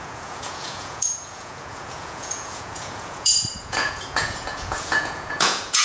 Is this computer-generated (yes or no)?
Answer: yes